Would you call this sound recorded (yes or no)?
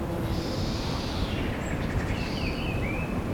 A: yes